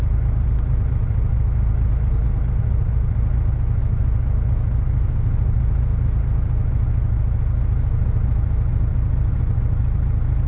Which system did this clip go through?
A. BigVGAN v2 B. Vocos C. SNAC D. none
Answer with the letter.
D